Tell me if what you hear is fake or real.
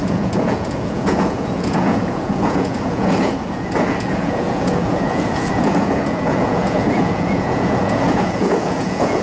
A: fake